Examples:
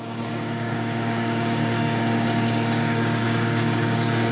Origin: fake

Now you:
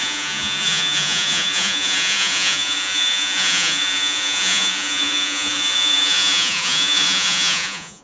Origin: fake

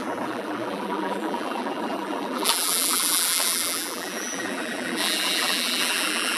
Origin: fake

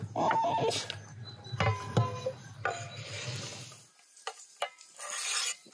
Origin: real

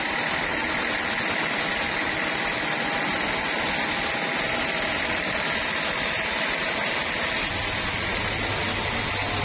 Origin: real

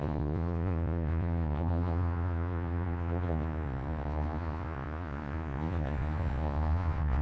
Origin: fake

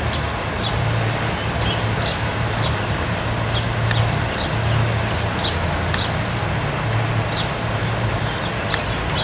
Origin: real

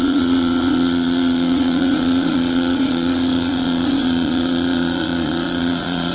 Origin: fake